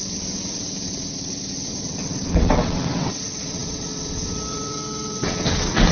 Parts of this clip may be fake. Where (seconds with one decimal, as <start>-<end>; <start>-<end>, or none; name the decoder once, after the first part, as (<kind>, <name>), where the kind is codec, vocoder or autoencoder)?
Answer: 0.0-5.9 (vocoder, WaveNeXt)